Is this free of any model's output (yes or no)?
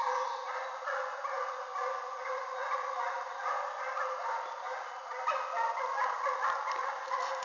yes